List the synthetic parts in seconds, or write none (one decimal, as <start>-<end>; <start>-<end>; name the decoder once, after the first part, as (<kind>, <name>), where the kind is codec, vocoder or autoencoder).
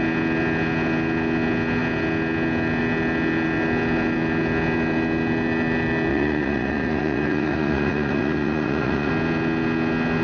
6.1-9.1 (vocoder, Vocos)